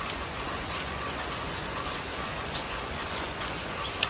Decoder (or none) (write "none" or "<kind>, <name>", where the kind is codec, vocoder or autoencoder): vocoder, Vocos